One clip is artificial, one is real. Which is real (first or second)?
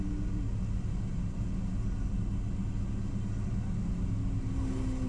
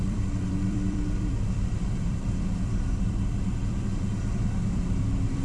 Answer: first